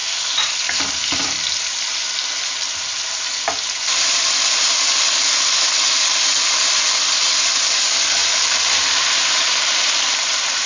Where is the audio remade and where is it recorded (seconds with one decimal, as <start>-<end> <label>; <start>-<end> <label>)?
0.0-8.2 recorded; 8.2-10.7 remade